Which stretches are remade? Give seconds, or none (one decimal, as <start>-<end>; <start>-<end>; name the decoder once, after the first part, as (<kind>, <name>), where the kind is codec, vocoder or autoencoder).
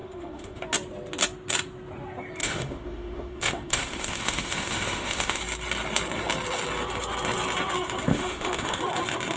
0.0-0.6 (autoencoder, DAC-VAE); 2.4-5.4; 8.1-8.8